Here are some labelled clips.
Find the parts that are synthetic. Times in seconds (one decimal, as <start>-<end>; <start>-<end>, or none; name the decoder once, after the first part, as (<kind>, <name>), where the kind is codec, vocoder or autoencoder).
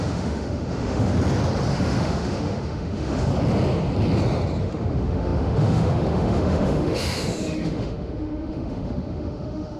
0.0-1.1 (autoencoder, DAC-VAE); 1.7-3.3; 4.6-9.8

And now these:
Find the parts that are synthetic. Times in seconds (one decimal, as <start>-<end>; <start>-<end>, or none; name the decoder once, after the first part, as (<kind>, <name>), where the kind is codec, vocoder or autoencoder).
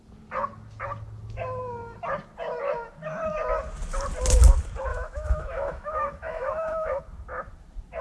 4.9-7.0 (autoencoder, DAC-VAE)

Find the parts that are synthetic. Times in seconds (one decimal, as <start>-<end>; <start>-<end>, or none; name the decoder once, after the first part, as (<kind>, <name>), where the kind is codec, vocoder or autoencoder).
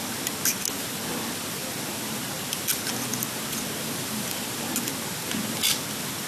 none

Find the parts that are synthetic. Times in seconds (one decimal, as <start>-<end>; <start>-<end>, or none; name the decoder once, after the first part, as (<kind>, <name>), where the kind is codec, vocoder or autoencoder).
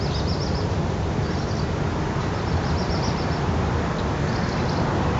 none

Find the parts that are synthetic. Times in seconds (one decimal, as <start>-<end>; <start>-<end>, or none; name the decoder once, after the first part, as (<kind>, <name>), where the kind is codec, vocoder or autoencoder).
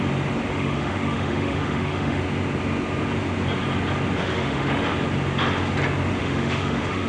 0.5-2.2 (autoencoder, DAC-VAE); 4.2-4.8; 6.2-7.1